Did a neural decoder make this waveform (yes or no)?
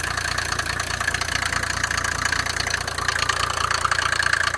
no